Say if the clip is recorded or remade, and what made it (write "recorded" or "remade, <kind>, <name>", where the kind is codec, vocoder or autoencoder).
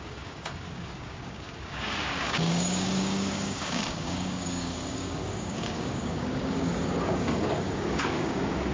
remade, codec, DAC